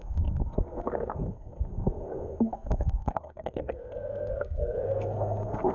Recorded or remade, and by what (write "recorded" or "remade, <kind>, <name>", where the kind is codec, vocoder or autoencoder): remade, codec, SNAC